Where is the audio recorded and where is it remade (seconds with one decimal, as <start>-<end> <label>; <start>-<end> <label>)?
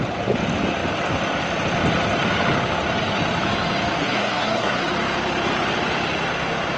0.0-4.0 recorded; 4.0-4.9 remade; 4.9-6.8 recorded